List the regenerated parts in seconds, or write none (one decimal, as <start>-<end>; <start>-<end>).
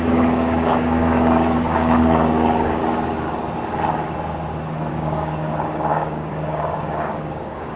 0.0-2.8; 4.9-7.8